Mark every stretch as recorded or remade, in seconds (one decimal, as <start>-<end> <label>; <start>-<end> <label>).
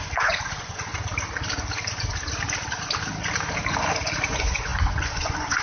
0.0-0.9 remade; 0.9-4.3 recorded; 4.3-5.6 remade